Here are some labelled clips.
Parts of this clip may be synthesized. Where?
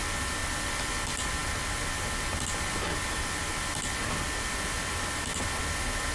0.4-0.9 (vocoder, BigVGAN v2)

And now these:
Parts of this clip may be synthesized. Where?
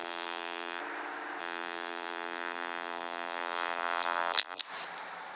0.0-0.8 (vocoder, BigVGAN v2); 1.4-4.6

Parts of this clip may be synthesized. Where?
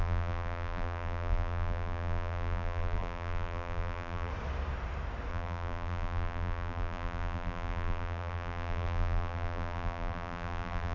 0.0-4.3 (vocoder, BigVGAN v2); 5.3-10.9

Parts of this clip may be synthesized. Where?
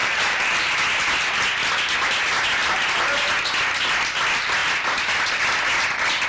0.0-0.6 (vocoder, BigVGAN v2); 2.6-3.2